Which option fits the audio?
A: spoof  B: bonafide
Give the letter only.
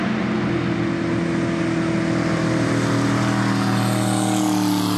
B